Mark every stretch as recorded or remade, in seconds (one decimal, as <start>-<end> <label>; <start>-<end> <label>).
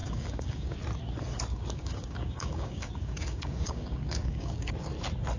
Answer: 0.0-0.8 remade; 0.8-1.5 recorded; 1.5-4.7 remade; 4.7-5.4 recorded